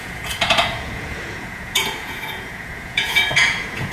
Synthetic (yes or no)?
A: yes